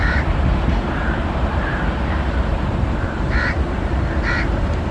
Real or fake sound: fake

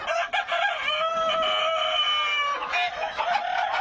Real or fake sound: real